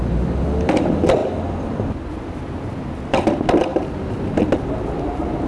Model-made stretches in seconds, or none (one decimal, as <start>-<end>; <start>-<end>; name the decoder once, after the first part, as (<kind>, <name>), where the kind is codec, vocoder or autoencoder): 1.2-2.1 (vocoder, BigVGAN v2); 3.7-4.4

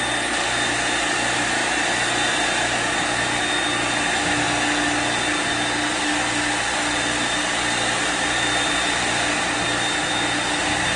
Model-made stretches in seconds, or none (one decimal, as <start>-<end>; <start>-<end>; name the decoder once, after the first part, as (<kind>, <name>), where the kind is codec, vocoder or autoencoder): none

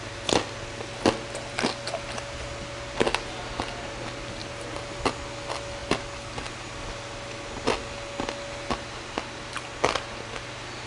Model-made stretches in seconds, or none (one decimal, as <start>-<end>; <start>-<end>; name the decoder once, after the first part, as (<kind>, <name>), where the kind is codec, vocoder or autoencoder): 4.4-5.0 (vocoder, BigVGAN v2)

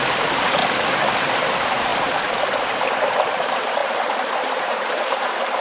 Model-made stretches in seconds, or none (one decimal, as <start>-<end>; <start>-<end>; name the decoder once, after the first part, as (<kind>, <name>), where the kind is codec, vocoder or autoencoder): 0.0-0.6 (vocoder, BigVGAN v2); 1.4-5.6